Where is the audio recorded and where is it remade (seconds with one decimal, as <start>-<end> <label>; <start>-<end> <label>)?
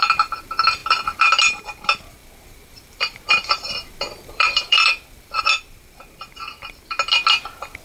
0.0-2.2 recorded; 2.2-5.4 remade; 5.4-7.8 recorded